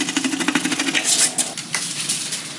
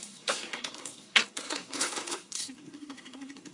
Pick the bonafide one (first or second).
first